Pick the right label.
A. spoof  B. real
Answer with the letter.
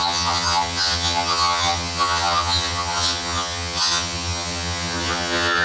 A